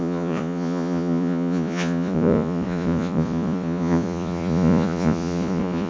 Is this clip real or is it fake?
fake